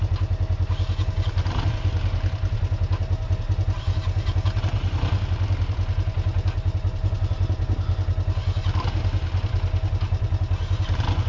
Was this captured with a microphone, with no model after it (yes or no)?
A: yes